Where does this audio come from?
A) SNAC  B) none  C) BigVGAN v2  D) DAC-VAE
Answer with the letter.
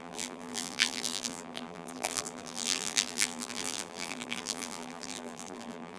C